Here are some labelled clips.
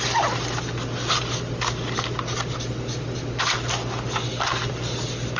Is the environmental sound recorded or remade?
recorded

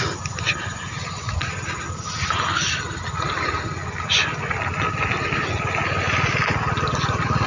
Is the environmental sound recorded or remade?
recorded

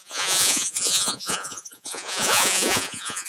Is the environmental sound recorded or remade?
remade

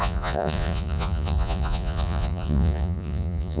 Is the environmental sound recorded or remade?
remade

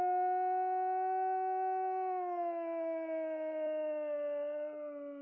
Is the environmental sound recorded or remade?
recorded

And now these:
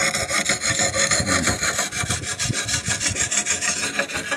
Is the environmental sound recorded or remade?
recorded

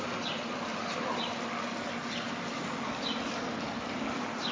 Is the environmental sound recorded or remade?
recorded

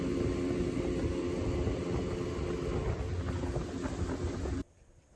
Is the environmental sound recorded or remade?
recorded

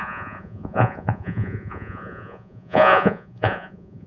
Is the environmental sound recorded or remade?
remade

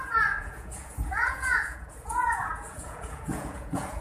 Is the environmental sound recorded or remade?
remade